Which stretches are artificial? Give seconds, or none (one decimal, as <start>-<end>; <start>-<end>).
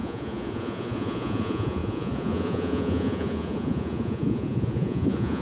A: 0.0-5.4